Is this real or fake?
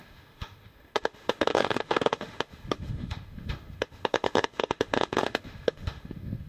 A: fake